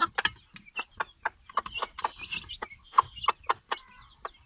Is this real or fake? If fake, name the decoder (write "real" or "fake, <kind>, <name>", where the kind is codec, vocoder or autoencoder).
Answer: real